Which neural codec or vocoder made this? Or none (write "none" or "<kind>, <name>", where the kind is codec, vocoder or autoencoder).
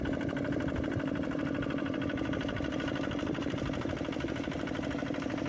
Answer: vocoder, BigVGAN v2